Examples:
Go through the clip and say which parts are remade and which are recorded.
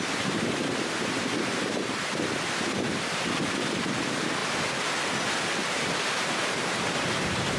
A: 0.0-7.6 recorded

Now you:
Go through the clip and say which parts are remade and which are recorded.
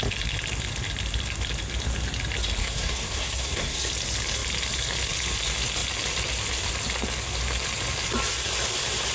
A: 0.0-2.6 recorded; 2.6-3.9 remade; 3.9-9.1 recorded